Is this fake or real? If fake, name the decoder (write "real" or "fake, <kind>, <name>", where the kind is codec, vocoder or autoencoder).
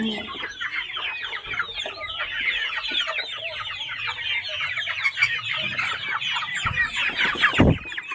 real